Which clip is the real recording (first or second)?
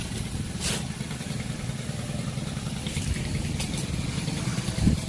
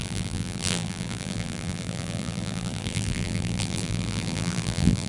first